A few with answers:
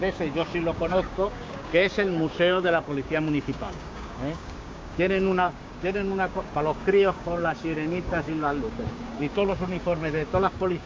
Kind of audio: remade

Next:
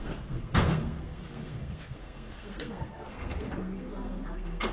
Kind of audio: remade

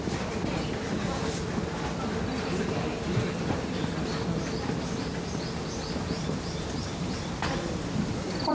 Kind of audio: recorded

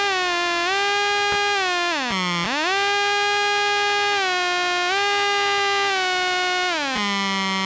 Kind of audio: recorded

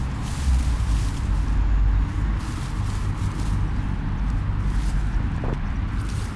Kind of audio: recorded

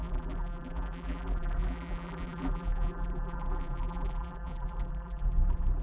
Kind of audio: remade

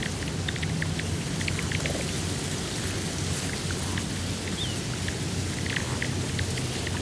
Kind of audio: recorded